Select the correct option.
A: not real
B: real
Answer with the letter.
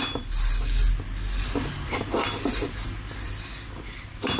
B